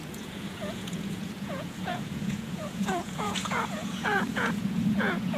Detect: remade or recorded remade